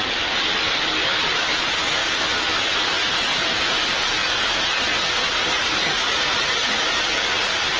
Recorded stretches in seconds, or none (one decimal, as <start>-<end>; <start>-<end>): 0.0-5.4; 6.9-7.8